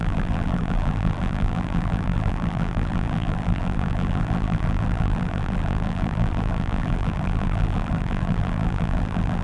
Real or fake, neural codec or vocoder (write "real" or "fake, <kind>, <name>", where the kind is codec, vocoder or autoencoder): fake, vocoder, BigVGAN v2